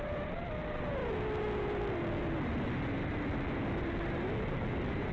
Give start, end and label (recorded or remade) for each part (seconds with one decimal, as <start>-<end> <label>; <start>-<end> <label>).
0.0-5.1 recorded